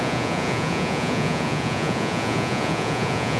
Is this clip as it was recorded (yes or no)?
no